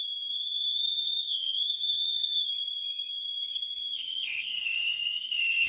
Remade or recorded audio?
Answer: remade